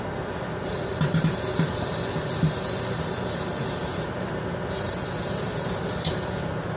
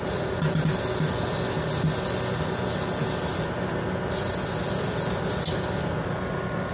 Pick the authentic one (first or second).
second